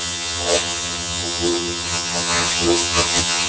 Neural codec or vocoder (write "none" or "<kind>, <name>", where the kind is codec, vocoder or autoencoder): vocoder, HiFi-GAN